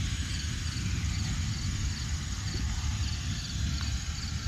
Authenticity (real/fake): fake